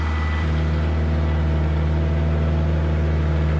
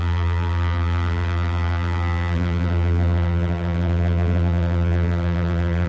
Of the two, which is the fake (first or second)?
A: second